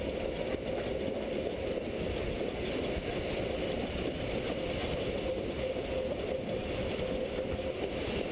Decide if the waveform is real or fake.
real